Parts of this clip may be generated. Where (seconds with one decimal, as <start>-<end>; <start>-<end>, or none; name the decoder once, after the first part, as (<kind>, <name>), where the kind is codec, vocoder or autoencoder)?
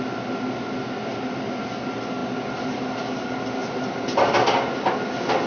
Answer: 1.1-1.6 (vocoder, BigVGAN v2); 3.6-4.4